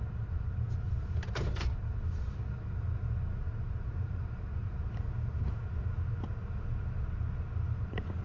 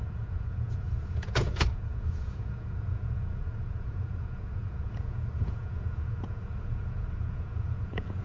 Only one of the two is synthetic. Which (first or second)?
second